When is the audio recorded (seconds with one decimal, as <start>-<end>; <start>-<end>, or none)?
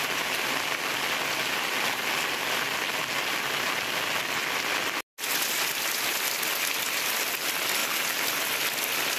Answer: 0.0-9.2